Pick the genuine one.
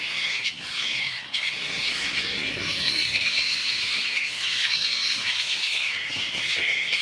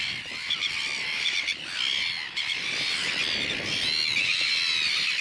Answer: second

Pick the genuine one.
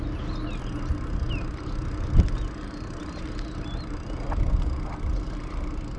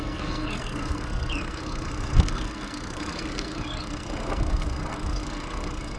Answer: first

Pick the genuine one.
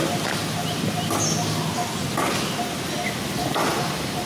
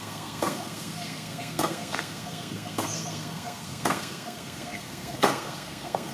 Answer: first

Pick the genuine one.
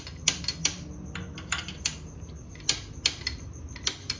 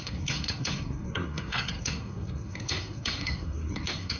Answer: first